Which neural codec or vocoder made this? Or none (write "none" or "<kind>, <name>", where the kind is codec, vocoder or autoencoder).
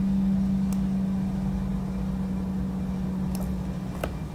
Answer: none